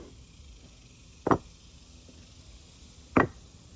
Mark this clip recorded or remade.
recorded